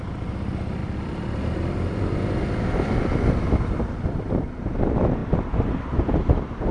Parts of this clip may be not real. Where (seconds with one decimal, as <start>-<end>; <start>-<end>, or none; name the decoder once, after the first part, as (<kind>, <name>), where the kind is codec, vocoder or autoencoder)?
0.8-4.8 (vocoder, BigVGAN v2)